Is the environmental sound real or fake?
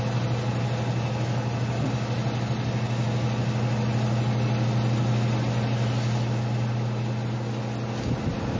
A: real